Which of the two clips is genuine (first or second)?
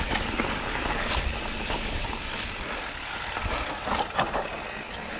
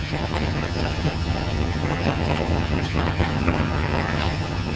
first